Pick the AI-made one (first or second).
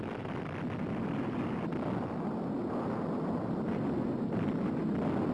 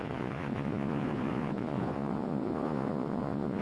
second